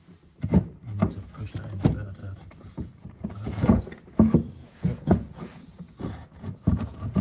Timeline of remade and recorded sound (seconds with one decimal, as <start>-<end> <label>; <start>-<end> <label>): 0.0-2.2 recorded; 2.2-3.8 remade; 3.8-4.6 recorded; 4.6-7.2 remade